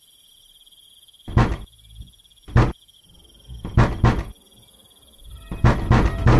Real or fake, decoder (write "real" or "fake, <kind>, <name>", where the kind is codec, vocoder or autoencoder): real